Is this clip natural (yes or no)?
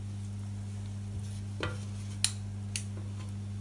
yes